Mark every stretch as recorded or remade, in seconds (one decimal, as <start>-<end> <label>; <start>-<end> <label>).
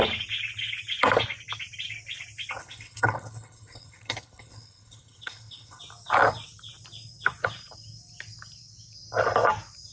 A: 0.0-2.6 recorded; 2.6-5.8 remade; 5.8-9.9 recorded